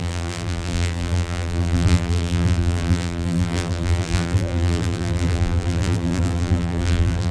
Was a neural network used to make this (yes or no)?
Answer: yes